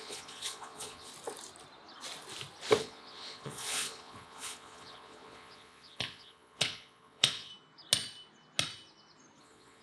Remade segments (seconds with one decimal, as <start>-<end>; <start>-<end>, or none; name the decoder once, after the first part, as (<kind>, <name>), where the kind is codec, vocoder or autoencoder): 0.0-1.1 (vocoder, Vocos); 2.8-7.5; 9.4-9.8